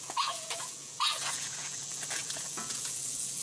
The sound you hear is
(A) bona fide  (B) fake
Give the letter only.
B